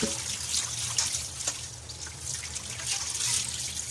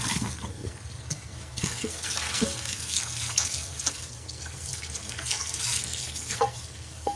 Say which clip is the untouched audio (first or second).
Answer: first